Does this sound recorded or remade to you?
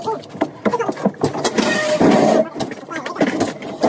recorded